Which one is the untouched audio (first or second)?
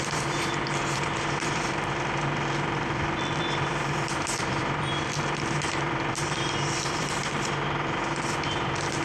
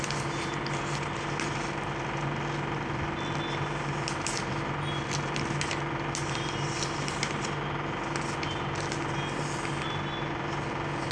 second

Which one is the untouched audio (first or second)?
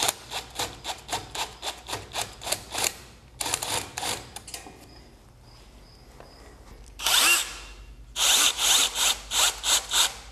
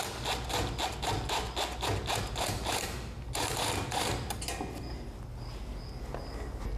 second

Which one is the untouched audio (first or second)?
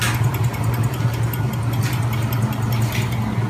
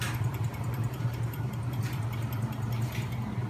first